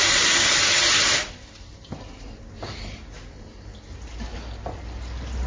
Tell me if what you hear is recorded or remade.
recorded